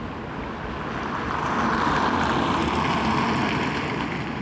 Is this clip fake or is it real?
real